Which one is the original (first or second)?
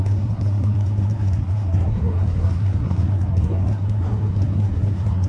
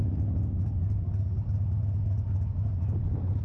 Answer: second